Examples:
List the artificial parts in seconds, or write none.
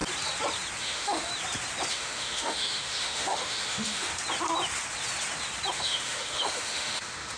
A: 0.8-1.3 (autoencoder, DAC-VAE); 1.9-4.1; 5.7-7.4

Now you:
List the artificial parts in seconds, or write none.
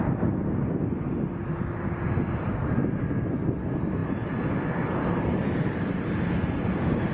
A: none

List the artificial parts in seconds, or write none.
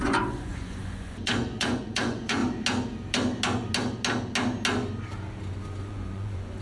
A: 0.0-2.4 (vocoder, Vocos); 5.8-6.6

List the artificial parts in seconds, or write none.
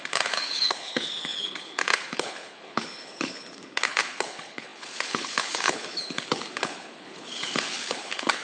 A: 0.0-8.4 (codec, HILCodec)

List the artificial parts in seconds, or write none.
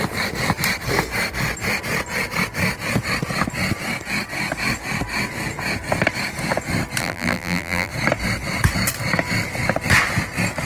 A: 7.0-7.9 (vocoder, BigVGAN v2)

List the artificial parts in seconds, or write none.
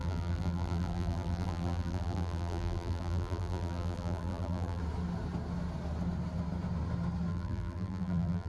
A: 0.0-4.8 (vocoder, BigVGAN v2); 7.3-8.5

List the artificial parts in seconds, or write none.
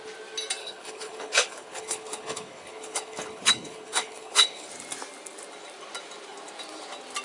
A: 0.6-4.7 (codec, HILCodec)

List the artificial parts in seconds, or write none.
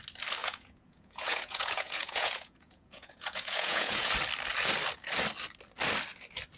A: 0.4-4.1 (vocoder, Vocos)